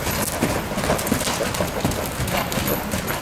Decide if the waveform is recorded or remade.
recorded